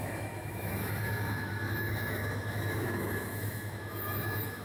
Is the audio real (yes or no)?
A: no